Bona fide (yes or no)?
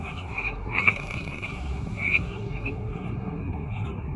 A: no